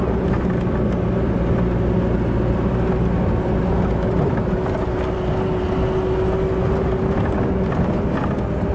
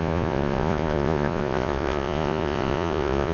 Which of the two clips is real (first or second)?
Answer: first